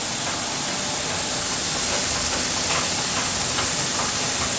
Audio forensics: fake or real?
real